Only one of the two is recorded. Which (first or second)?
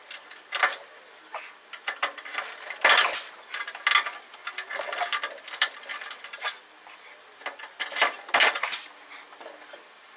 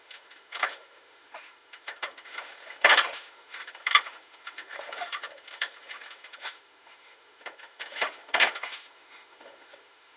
first